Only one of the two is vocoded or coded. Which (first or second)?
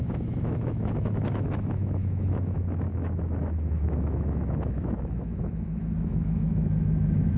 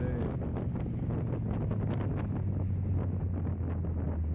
first